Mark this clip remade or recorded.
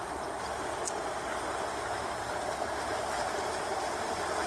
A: recorded